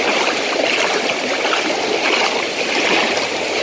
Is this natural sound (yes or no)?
yes